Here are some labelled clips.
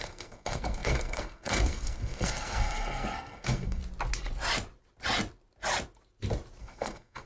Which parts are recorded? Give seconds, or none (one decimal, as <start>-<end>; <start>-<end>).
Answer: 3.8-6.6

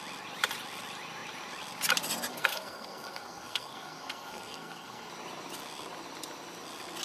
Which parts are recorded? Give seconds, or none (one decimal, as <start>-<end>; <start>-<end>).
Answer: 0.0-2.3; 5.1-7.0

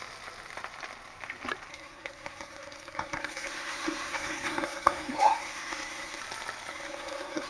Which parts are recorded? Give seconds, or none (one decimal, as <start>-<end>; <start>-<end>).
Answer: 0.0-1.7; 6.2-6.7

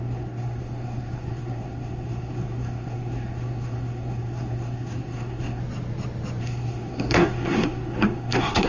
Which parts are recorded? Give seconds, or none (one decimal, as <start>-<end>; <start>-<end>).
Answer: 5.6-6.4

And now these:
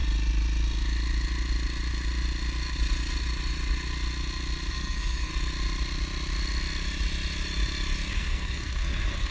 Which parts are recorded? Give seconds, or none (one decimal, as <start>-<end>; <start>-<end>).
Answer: 0.0-4.7; 5.3-8.1

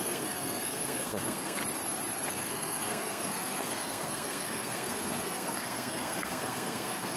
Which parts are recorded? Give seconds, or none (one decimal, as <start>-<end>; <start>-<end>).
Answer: 1.6-2.3